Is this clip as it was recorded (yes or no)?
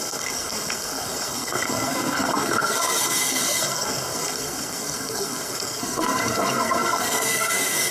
no